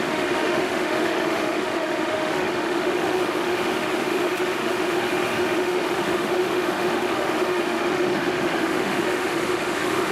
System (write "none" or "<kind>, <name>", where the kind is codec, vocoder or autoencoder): autoencoder, DAC-VAE